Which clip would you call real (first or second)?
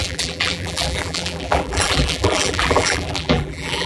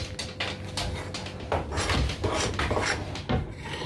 second